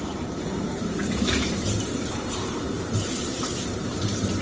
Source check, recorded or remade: remade